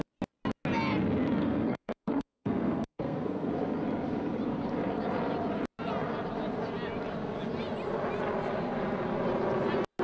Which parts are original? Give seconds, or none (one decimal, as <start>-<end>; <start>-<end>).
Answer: 0.0-1.4; 3.5-10.0